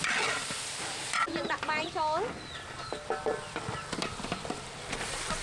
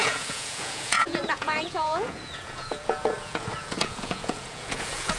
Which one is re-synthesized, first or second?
second